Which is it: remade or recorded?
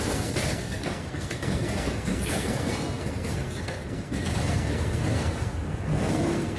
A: remade